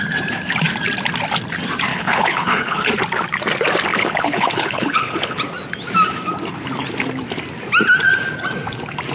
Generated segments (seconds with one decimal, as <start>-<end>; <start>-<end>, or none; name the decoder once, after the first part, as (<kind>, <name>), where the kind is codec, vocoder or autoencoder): 1.9-2.9 (codec, HILCodec); 3.9-5.4